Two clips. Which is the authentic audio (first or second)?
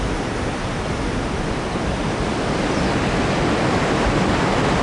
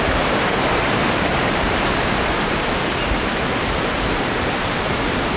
first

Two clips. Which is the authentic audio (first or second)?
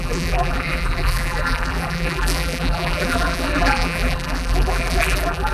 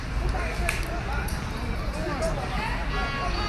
second